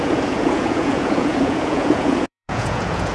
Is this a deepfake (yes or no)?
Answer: yes